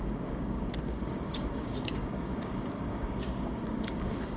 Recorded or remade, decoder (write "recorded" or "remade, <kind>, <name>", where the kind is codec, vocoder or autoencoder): remade, codec, DAC